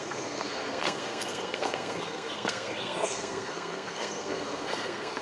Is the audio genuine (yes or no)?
no